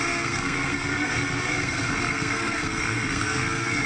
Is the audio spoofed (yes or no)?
yes